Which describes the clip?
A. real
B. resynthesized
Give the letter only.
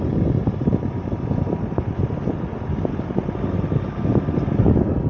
A